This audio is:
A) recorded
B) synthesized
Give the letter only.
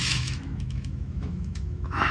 B